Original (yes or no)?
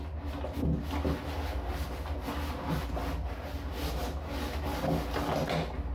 yes